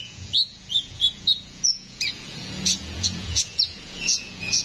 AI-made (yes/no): yes